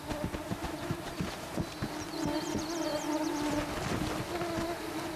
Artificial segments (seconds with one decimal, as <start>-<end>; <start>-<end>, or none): 0.6-1.6